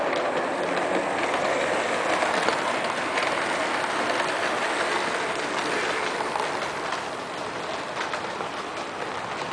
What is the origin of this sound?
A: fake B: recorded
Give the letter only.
B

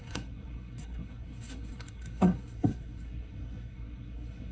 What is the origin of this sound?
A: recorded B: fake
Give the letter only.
B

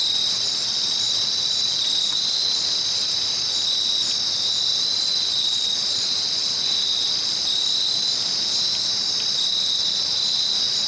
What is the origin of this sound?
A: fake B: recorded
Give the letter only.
B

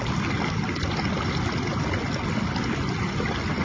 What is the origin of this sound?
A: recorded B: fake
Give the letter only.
A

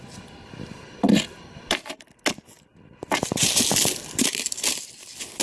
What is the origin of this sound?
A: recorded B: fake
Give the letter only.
A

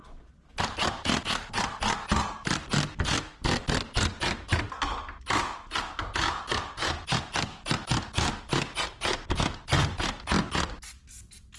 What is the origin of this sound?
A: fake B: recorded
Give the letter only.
B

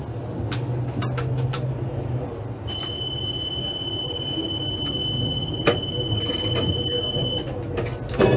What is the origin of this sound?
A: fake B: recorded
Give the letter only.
B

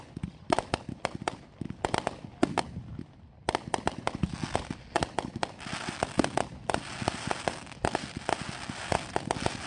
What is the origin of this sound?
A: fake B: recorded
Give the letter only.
B